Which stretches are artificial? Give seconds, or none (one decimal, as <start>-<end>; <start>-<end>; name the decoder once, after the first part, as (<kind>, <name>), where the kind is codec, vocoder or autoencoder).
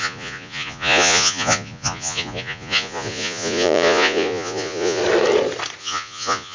0.0-5.0 (vocoder, Vocos); 5.8-6.5